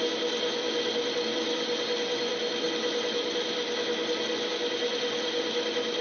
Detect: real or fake real